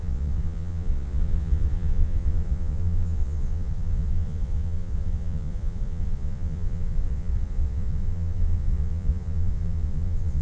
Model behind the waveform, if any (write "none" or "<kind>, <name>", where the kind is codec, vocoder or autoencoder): vocoder, Vocos